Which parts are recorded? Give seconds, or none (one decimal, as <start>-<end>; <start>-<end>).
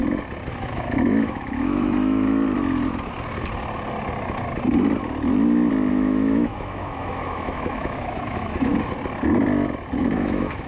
0.0-0.5; 2.3-5.9; 8.7-10.0